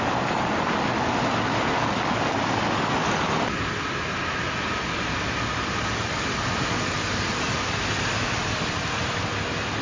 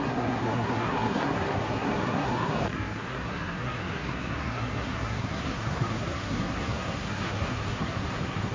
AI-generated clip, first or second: second